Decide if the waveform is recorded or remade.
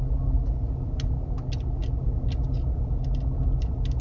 recorded